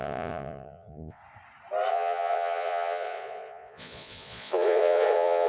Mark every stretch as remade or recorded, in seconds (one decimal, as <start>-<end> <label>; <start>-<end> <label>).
0.0-1.2 remade; 1.2-1.9 recorded; 1.9-5.5 remade